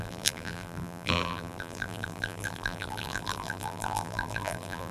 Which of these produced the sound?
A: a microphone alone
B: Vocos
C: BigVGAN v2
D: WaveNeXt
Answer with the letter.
C